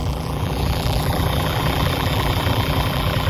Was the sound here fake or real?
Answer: fake